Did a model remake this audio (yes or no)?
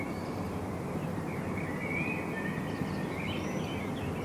no